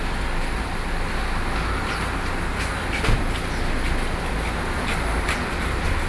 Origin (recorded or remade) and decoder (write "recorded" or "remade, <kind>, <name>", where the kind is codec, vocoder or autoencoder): recorded